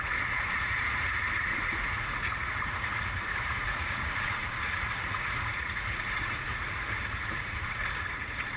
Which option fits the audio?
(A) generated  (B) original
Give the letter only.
A